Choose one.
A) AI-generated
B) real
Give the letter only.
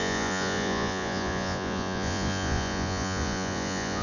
A